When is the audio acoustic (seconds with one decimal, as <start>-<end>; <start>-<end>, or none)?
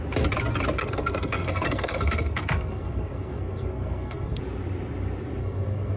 0.0-0.8; 4.4-5.4